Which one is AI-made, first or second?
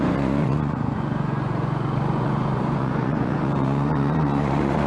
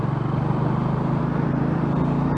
first